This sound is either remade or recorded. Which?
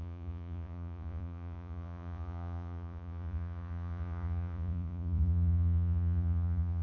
remade